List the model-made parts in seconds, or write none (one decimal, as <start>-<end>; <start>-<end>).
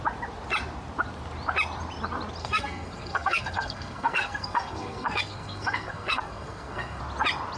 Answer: 2.4-7.0